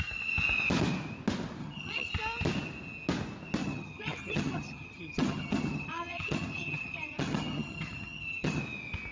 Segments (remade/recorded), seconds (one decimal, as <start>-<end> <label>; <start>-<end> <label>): 0.0-1.6 recorded; 1.6-2.1 remade; 2.1-3.6 recorded; 3.6-8.6 remade; 8.6-9.1 recorded